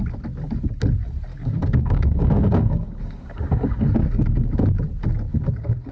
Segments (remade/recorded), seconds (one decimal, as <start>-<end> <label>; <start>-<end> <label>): 0.0-1.3 recorded; 1.3-4.7 remade; 4.7-5.3 recorded; 5.3-5.9 remade